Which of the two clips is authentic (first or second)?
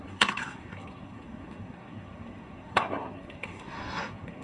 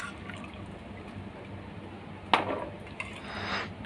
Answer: second